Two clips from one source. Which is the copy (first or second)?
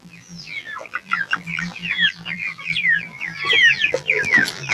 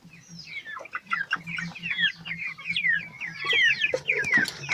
first